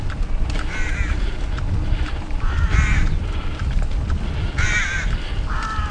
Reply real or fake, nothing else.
real